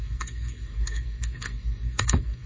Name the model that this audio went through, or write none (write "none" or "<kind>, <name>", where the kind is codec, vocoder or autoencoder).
codec, SNAC